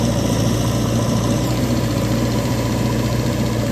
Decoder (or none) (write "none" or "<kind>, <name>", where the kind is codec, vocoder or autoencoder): vocoder, BigVGAN v2